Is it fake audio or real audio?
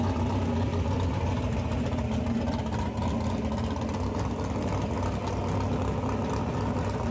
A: real